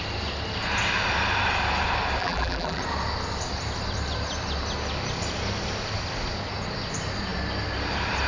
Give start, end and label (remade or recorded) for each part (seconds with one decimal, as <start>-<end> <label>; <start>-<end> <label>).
0.0-2.2 recorded; 2.2-2.8 remade; 2.8-8.3 recorded